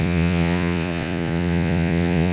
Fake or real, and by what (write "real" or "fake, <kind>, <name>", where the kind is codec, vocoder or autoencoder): fake, vocoder, Vocos